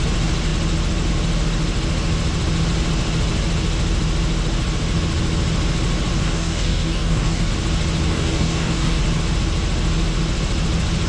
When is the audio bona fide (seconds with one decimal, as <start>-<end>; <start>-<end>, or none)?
0.0-6.2; 7.5-8.1; 9.0-11.1

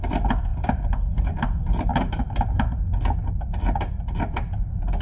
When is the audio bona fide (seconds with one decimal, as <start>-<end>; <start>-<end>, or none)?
0.0-5.0

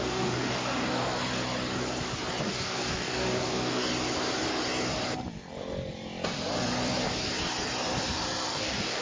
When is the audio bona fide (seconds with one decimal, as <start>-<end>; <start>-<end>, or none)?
1.2-2.4; 3.9-8.5